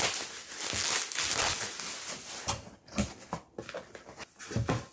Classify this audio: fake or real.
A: real